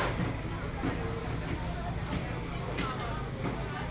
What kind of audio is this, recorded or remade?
recorded